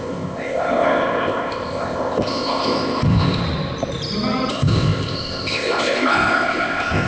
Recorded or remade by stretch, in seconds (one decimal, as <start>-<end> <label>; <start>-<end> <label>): 0.0-3.4 remade; 3.4-4.5 recorded; 4.5-7.1 remade

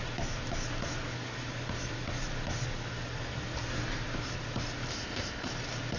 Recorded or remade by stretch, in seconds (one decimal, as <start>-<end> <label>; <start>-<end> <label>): 0.0-4.9 recorded; 4.9-5.5 remade; 5.5-6.0 recorded

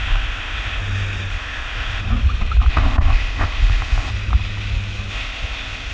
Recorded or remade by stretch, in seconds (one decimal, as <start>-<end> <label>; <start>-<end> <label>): 0.0-0.8 remade; 0.8-1.3 recorded; 1.3-2.0 remade; 2.0-2.7 recorded; 2.7-4.1 remade; 4.1-5.1 recorded; 5.1-5.9 remade

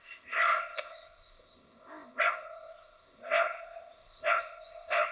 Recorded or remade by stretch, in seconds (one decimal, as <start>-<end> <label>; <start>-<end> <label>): 0.0-5.1 remade

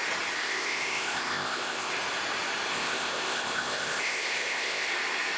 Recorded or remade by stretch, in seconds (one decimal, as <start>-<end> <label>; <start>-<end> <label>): 0.0-0.4 recorded; 0.4-1.9 remade; 1.9-2.7 recorded; 2.7-4.9 remade; 4.9-5.4 recorded

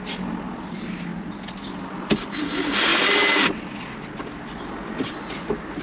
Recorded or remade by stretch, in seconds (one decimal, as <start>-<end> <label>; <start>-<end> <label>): 0.0-5.8 recorded

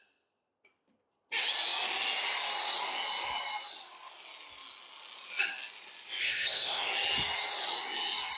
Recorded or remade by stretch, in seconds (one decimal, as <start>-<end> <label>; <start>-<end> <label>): 0.0-6.2 recorded; 6.2-6.9 remade; 6.9-8.4 recorded

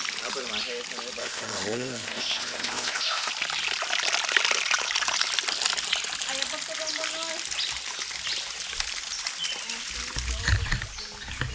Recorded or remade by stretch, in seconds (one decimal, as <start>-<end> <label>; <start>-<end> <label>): 0.0-1.2 recorded; 1.2-3.3 remade; 3.3-11.5 recorded